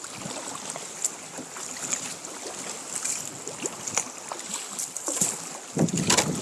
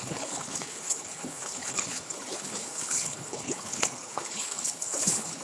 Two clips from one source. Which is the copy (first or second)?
second